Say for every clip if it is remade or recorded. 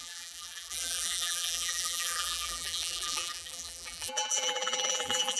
remade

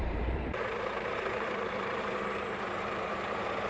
remade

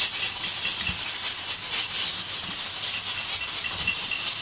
recorded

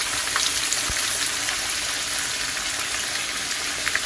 recorded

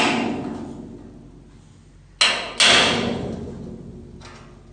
recorded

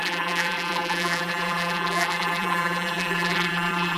remade